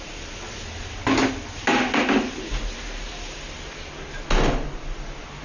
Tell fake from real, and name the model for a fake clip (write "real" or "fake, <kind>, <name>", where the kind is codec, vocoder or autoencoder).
real